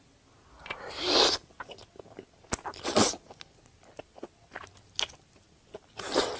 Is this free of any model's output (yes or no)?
yes